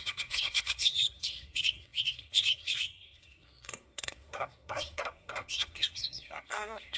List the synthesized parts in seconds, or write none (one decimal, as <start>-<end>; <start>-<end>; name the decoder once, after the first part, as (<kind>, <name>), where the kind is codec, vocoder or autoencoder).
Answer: 0.0-7.0 (codec, SNAC)